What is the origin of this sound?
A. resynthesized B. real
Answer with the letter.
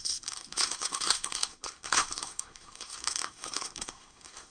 A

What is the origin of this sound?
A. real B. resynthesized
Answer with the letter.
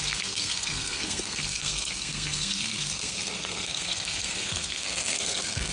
B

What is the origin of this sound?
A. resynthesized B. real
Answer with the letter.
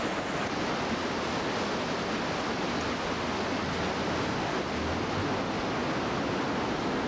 B